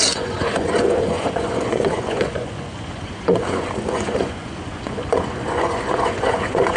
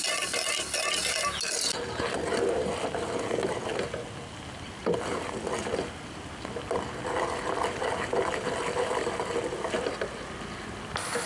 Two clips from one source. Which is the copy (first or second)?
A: first